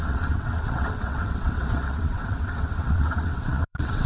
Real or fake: fake